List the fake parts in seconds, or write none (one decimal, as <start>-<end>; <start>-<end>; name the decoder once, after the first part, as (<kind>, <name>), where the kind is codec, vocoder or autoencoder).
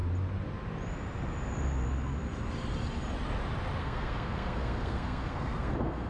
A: 3.8-6.1 (codec, SNAC)